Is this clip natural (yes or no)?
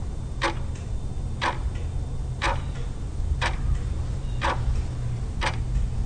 yes